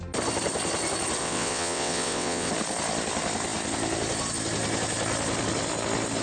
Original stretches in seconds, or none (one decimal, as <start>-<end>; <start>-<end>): 0.0-1.2; 2.5-6.2